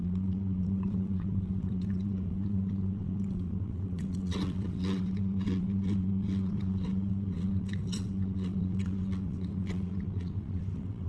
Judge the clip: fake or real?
fake